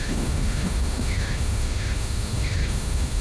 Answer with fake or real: fake